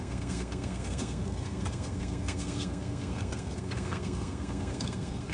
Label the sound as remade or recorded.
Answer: remade